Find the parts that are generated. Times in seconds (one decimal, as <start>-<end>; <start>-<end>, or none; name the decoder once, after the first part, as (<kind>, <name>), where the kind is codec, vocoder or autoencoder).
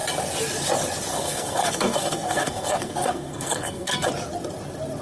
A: 1.1-4.1 (codec, SNAC)